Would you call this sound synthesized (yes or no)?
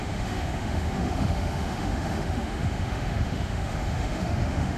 yes